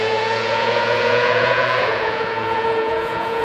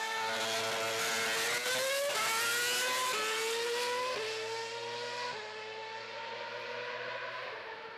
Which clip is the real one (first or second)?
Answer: second